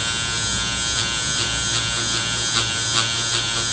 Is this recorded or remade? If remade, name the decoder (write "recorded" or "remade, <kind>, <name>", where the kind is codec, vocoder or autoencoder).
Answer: recorded